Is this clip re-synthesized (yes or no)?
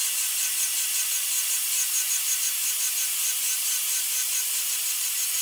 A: yes